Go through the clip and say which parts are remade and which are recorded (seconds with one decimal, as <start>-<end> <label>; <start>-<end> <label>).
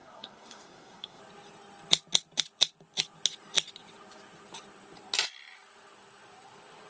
0.0-1.2 remade; 1.2-6.9 recorded